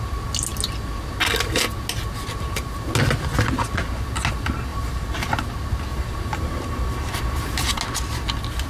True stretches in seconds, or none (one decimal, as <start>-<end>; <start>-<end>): 0.0-4.7; 5.4-5.9; 7.8-8.7